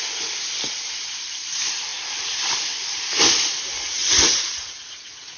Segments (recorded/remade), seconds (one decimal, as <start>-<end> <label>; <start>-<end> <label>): 0.0-4.0 recorded; 4.0-5.4 remade